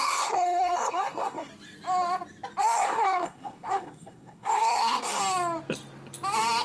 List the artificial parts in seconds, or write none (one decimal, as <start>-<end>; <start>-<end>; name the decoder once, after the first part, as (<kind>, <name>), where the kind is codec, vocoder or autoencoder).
0.0-1.5 (codec, SNAC); 2.6-5.2